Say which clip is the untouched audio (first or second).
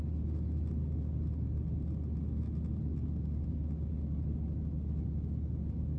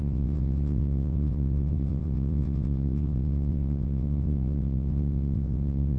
first